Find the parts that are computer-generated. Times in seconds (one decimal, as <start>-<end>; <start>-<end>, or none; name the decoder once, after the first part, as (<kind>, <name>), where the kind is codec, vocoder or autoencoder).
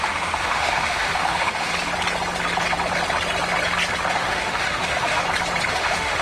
0.0-1.7 (autoencoder, DAC-VAE); 4.1-5.2; 5.7-6.2